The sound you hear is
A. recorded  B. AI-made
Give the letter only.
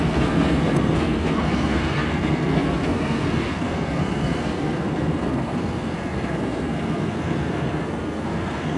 B